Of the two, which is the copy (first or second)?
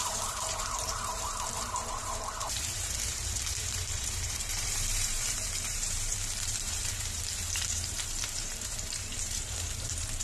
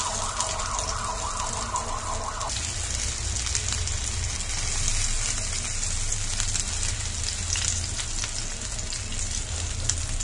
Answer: first